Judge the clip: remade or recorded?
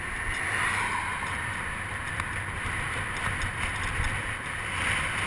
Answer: recorded